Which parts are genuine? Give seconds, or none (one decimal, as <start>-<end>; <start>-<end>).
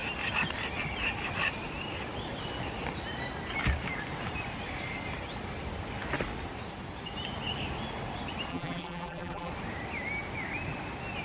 0.0-8.5; 9.5-11.2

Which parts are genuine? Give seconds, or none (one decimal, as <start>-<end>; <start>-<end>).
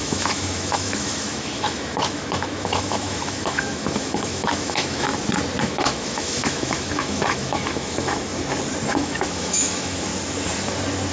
5.1-5.6; 8.3-8.9; 10.1-11.1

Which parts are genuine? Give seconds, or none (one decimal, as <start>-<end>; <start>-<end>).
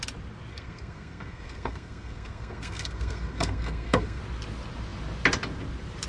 0.0-0.5; 4.2-6.1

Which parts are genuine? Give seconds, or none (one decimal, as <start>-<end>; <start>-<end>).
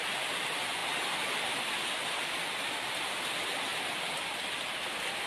0.0-5.3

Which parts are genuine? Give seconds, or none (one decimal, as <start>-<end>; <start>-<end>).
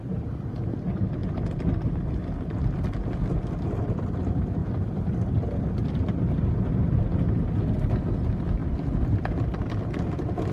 0.0-10.5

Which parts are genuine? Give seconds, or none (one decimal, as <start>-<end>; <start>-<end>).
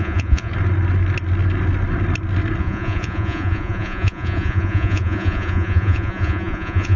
0.5-2.6